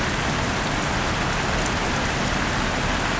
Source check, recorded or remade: recorded